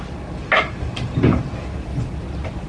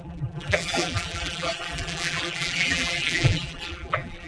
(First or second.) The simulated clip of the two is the second